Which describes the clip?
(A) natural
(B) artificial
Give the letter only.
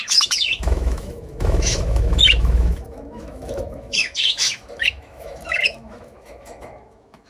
B